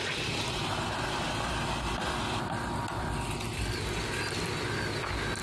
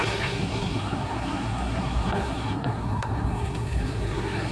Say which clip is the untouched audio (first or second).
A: first